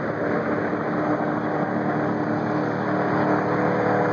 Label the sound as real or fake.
real